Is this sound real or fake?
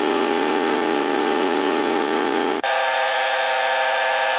fake